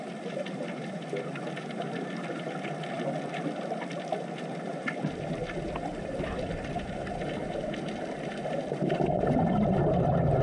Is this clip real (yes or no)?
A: no